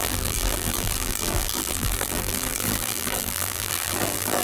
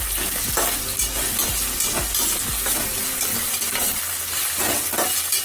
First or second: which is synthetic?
first